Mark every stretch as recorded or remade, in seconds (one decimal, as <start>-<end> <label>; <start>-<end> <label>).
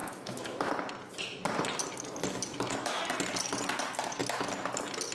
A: 0.0-0.7 remade; 0.7-2.5 recorded; 2.5-3.0 remade; 3.0-5.1 recorded